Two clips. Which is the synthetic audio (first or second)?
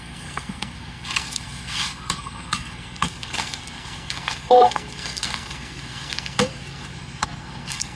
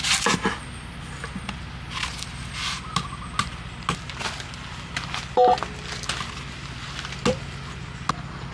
first